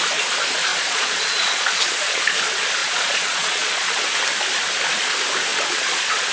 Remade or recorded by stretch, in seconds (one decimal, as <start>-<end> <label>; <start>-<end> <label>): 0.0-0.7 recorded; 0.7-2.2 remade; 2.2-2.8 recorded; 2.8-4.2 remade; 4.2-5.5 recorded; 5.5-6.3 remade